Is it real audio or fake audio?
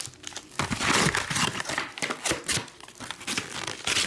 fake